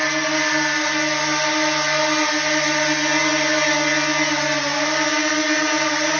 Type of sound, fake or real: real